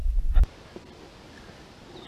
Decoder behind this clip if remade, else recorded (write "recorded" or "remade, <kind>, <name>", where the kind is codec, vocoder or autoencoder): recorded